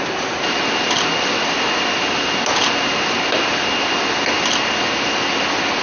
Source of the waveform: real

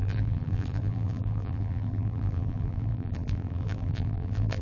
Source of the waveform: fake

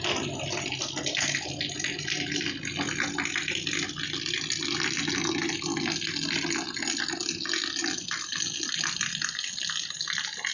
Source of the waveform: real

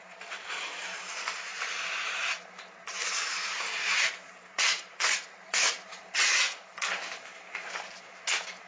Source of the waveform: fake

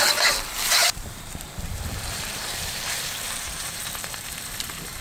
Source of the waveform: fake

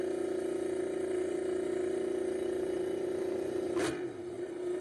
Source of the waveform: real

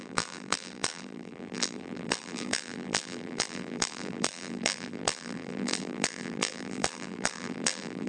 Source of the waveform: fake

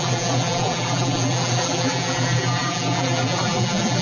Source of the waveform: fake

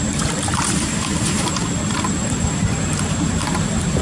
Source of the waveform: fake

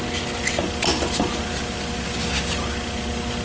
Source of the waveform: real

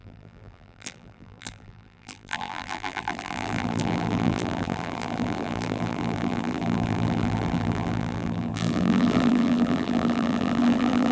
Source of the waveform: fake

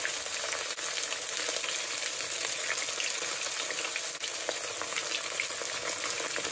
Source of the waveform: real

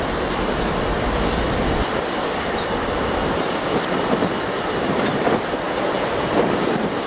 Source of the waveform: fake